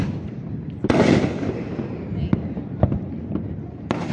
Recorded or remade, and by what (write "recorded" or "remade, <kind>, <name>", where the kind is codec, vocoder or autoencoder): recorded